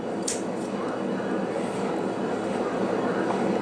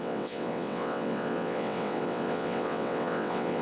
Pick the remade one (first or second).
second